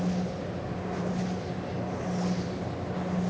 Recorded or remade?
recorded